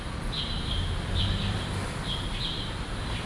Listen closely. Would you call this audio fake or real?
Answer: fake